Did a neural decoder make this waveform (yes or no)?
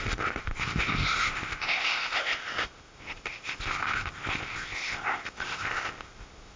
yes